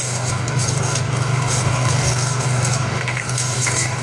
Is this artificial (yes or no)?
yes